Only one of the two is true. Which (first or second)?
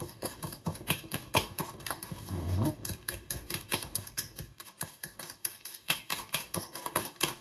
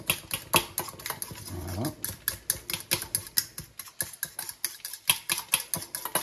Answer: second